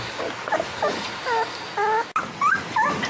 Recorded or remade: recorded